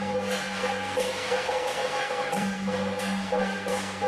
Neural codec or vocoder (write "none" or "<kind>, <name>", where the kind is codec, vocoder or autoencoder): codec, SNAC